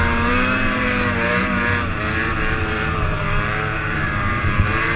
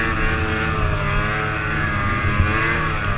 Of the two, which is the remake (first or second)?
first